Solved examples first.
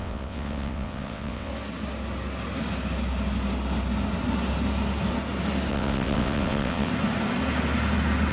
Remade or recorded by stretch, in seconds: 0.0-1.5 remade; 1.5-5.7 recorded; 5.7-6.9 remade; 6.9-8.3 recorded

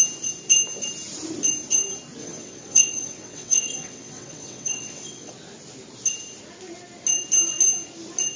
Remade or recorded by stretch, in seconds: 0.0-2.2 recorded; 2.2-5.3 remade; 5.3-8.4 recorded

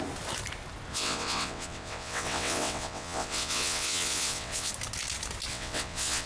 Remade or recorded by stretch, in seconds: 0.0-0.9 recorded; 0.9-4.7 remade; 4.7-5.5 recorded; 5.5-6.3 remade

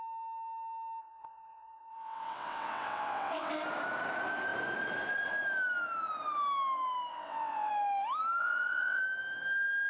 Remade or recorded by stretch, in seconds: 0.0-1.0 recorded; 1.0-3.5 remade; 3.5-7.1 recorded; 7.1-7.7 remade; 7.7-8.4 recorded; 8.4-9.0 remade; 9.0-9.9 recorded

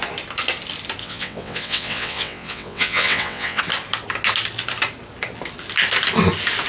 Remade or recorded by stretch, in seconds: 0.0-1.0 recorded; 1.0-3.6 remade; 3.6-6.7 recorded

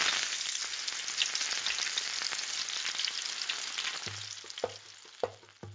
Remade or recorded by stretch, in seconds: 0.0-5.7 recorded

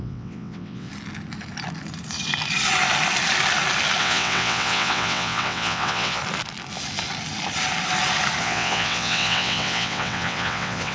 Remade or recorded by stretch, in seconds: 0.0-0.9 remade; 0.9-4.0 recorded; 4.0-6.2 remade; 6.2-8.4 recorded; 8.4-10.9 remade

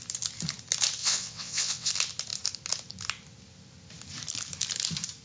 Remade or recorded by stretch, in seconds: 0.0-1.0 recorded; 1.0-1.9 remade; 1.9-5.2 recorded